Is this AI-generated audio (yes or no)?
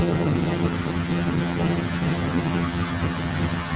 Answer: yes